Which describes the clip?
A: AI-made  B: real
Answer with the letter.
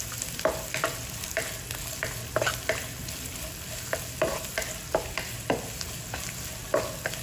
B